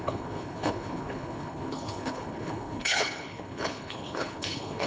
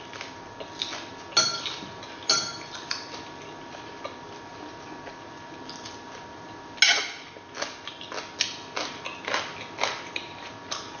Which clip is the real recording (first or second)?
second